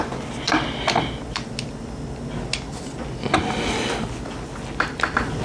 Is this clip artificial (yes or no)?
no